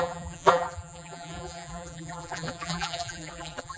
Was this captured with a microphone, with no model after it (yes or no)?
no